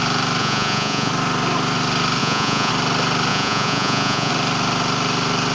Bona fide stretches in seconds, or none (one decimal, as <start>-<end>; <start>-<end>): 0.0-0.4; 1.1-2.2; 2.7-3.3; 4.3-5.5